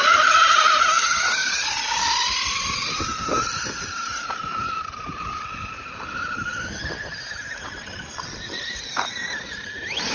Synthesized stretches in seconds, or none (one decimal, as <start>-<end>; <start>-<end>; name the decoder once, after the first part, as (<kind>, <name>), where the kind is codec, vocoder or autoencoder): none